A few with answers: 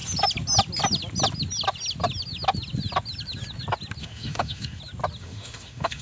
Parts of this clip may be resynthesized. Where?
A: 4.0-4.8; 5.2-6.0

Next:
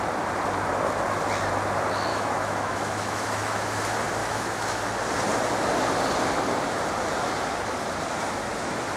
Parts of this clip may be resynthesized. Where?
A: 2.1-3.8; 4.2-4.8